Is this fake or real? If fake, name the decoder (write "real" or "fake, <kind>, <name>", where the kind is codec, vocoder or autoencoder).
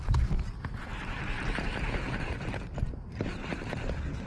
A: real